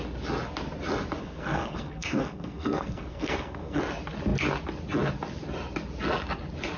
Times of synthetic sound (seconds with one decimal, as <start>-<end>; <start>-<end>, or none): 1.2-3.8